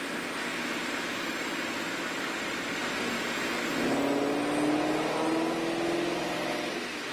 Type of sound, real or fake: real